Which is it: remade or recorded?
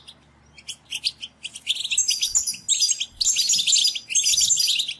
recorded